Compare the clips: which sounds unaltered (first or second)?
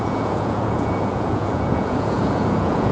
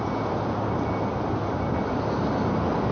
second